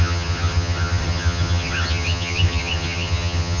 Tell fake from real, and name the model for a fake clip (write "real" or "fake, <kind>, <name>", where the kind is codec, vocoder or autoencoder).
fake, vocoder, HiFi-GAN